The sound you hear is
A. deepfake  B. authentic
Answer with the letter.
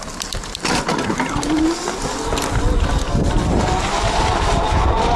B